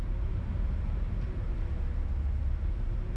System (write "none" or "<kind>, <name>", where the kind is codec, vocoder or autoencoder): vocoder, BigVGAN v2